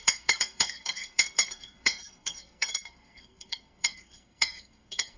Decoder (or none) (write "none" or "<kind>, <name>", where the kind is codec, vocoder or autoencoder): codec, SNAC